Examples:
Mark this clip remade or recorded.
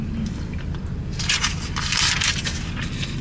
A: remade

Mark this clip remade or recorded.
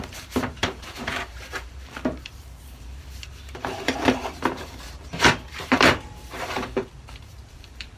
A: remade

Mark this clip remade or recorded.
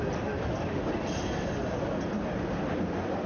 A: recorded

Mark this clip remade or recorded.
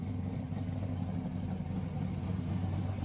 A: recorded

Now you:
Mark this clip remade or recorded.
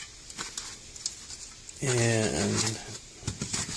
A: recorded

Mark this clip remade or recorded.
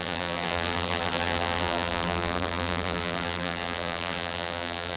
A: remade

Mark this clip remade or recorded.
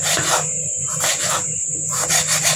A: recorded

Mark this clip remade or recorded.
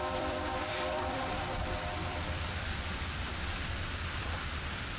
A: remade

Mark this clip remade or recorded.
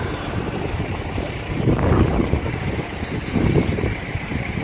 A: remade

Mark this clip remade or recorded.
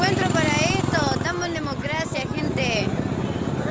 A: recorded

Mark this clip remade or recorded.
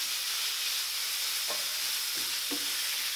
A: recorded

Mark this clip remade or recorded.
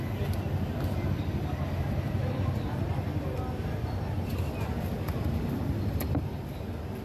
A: recorded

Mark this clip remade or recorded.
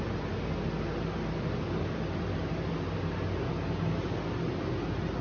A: recorded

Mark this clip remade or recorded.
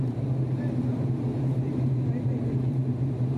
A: remade